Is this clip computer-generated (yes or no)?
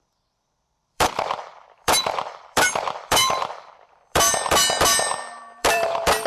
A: yes